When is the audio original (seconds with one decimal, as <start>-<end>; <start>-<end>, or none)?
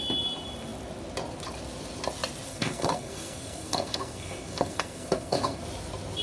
0.0-2.5; 5.6-6.2